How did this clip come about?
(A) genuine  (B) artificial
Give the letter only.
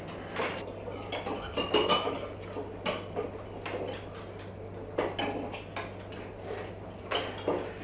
A